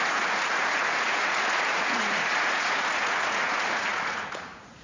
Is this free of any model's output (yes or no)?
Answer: no